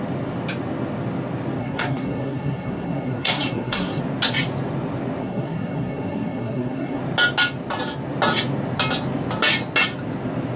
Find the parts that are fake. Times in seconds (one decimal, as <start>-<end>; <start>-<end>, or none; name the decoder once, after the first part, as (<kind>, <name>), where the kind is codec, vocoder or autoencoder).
1.6-4.0 (codec, SNAC); 5.2-7.0